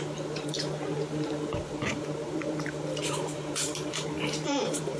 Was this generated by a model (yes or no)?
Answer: yes